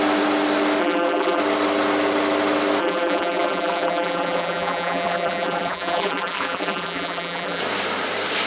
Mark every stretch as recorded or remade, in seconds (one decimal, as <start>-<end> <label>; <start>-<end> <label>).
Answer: 0.0-0.8 recorded; 0.8-1.4 remade; 1.4-2.8 recorded; 2.8-7.6 remade; 7.6-8.5 recorded